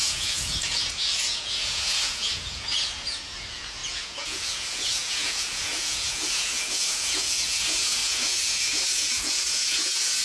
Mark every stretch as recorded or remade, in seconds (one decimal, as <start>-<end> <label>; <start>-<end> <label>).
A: 0.0-10.2 remade